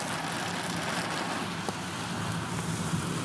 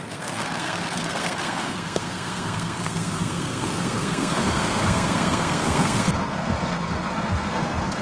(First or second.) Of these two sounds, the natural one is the first